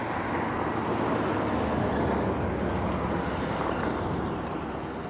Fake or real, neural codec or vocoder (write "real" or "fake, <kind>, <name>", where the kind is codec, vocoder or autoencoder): real